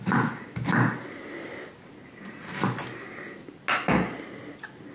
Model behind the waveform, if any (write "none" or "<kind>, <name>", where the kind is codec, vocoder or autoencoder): none